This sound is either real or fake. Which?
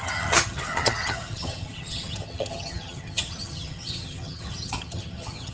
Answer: fake